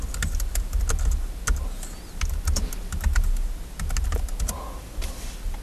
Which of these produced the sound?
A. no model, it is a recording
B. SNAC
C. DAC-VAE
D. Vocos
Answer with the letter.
A